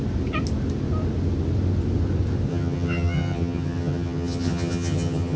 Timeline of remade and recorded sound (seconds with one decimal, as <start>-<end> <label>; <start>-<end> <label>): 0.0-2.5 recorded; 2.5-5.4 remade